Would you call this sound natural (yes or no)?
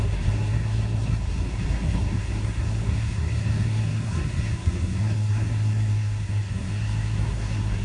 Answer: no